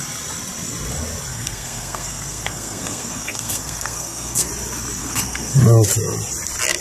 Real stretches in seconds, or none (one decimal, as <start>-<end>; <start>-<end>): 0.0-1.3; 4.5-5.0; 5.6-6.8